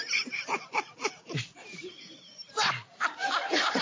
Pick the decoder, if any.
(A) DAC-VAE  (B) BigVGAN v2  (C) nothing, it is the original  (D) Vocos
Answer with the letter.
B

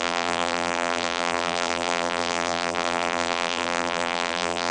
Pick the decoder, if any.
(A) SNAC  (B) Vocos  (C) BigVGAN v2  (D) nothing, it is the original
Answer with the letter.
C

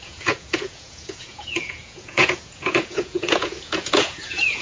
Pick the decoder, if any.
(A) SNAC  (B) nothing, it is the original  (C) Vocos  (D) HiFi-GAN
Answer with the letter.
C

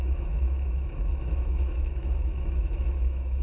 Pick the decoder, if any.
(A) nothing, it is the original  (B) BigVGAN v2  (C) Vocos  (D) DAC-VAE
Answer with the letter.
D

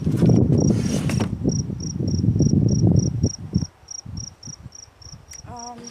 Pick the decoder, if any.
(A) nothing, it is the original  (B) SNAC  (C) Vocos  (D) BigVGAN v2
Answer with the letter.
A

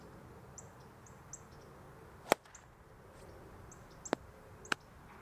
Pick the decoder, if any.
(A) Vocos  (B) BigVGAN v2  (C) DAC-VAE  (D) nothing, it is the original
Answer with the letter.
D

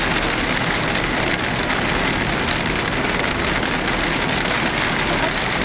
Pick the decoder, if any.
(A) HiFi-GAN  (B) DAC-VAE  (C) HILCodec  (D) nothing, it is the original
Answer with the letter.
D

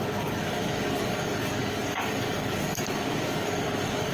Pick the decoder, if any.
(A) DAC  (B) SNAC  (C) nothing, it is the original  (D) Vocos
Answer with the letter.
A